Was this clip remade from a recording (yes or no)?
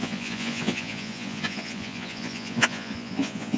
yes